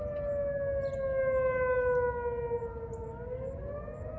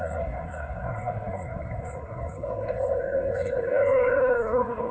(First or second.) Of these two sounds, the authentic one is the first